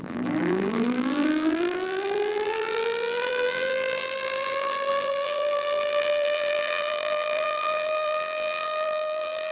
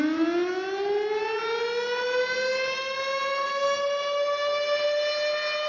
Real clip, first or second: second